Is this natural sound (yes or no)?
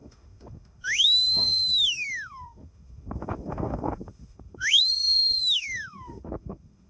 no